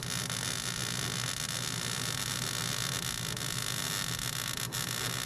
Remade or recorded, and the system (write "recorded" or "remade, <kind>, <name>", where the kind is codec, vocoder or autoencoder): recorded